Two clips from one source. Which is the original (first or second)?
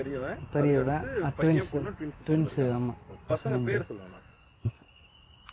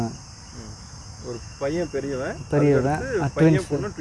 second